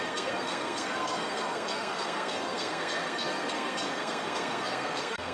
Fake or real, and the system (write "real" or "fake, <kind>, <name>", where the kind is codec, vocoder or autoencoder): fake, codec, SNAC